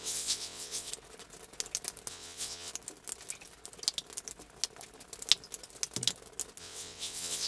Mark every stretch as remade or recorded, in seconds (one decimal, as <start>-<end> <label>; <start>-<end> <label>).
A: 0.0-0.9 remade; 0.9-2.1 recorded; 2.1-2.7 remade; 2.7-6.6 recorded; 6.6-7.5 remade